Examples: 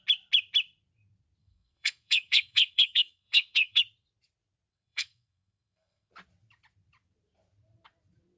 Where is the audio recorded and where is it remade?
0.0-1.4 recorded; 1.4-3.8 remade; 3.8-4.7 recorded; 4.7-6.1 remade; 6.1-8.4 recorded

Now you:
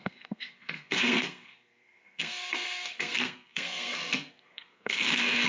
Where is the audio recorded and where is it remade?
0.0-5.5 remade

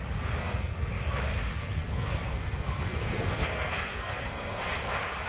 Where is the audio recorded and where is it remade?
0.0-0.4 recorded; 0.4-0.9 remade; 0.9-1.5 recorded; 1.5-4.7 remade; 4.7-5.3 recorded

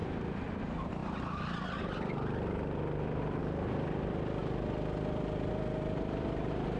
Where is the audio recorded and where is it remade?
0.0-6.8 recorded

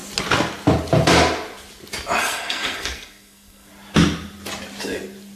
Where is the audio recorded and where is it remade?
0.0-2.2 recorded; 2.2-3.7 remade; 3.7-5.4 recorded

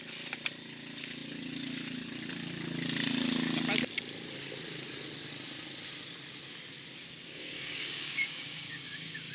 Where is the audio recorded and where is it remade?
0.0-7.0 recorded; 7.0-9.3 remade

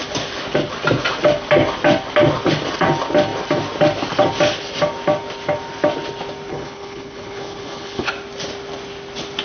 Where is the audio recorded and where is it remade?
0.0-6.5 recorded; 6.5-8.1 remade; 8.1-9.4 recorded

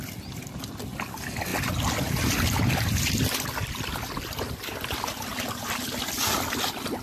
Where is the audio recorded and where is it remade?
0.0-7.0 recorded